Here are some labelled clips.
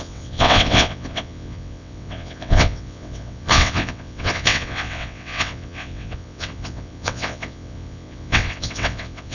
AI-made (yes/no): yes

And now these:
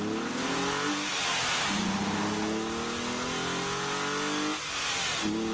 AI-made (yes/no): no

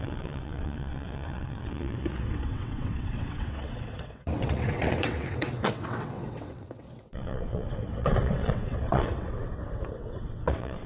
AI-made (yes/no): yes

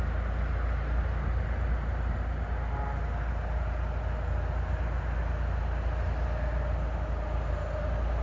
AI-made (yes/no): no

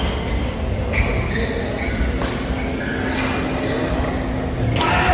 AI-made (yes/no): no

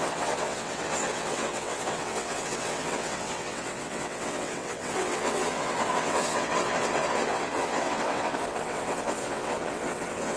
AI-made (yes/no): yes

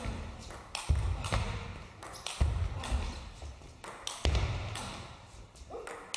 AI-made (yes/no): no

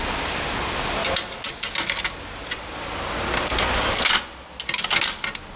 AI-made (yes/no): no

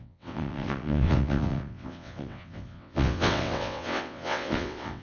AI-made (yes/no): yes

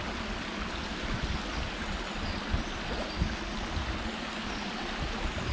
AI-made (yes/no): no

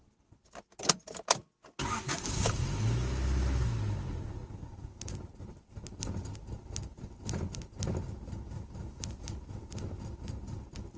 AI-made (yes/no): no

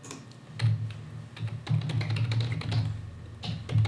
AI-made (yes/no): no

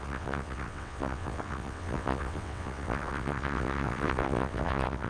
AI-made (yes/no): yes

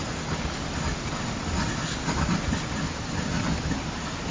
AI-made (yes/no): no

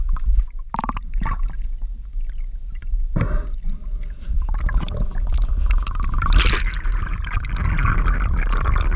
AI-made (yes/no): no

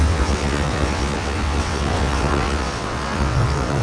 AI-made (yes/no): yes